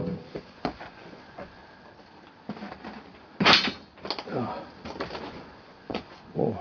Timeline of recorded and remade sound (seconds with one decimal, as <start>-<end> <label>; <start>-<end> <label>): 0.0-1.6 remade; 1.6-5.2 recorded; 5.2-6.6 remade